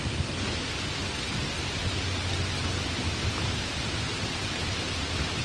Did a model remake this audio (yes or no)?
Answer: no